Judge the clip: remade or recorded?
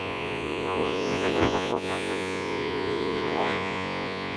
remade